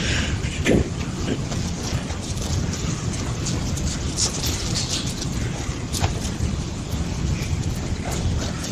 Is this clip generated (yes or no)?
no